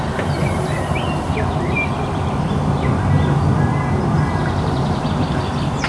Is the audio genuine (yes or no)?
yes